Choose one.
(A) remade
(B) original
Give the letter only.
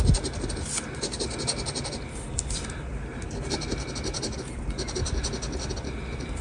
B